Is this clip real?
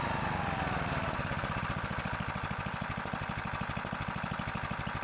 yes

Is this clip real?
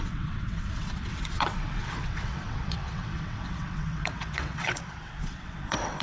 no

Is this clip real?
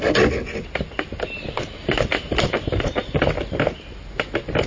yes